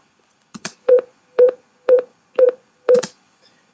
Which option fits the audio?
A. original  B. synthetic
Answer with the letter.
B